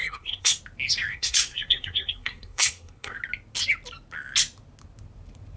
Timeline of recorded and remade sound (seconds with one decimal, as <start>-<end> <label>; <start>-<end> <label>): 0.0-0.6 remade; 0.6-1.1 recorded; 1.1-3.2 remade; 3.2-5.6 recorded